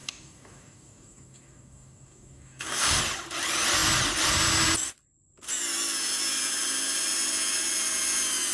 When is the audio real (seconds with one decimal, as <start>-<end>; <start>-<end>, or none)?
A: 3.0-8.5